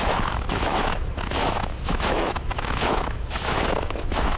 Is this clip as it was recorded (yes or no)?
no